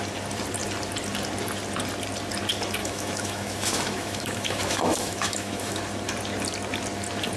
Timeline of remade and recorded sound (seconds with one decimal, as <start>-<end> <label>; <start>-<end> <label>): 0.0-2.8 recorded; 2.8-5.8 remade; 5.8-7.4 recorded